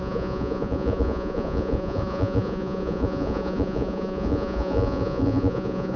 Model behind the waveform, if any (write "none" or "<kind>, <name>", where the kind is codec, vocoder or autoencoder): vocoder, Vocos